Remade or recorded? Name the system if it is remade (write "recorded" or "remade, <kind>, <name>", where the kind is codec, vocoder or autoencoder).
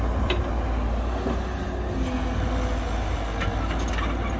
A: recorded